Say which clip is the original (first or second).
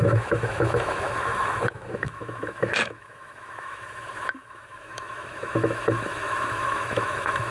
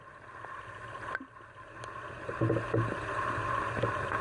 second